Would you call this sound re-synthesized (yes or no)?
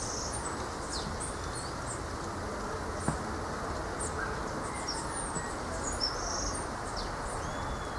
no